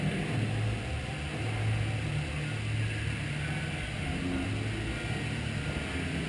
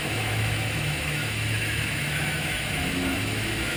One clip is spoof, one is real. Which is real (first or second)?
first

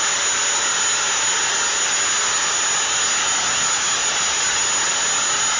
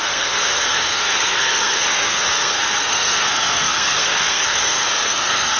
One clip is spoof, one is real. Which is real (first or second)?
first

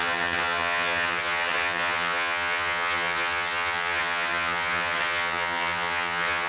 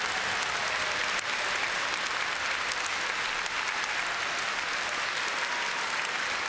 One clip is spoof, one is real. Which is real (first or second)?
second